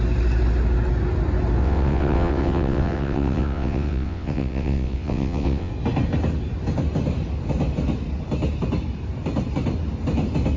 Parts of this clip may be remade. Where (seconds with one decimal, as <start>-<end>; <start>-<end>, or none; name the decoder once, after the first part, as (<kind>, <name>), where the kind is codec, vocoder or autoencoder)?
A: 1.6-5.7 (vocoder, WaveNeXt)